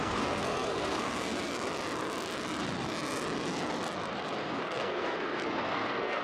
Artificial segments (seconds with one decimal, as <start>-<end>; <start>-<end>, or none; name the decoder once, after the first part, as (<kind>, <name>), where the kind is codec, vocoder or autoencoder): 0.0-1.5 (codec, SNAC); 4.4-6.2